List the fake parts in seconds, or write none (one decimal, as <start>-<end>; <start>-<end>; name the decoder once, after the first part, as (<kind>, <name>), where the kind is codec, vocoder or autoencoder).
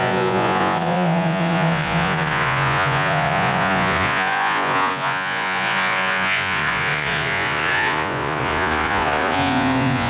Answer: 0.0-10.1 (vocoder, Vocos)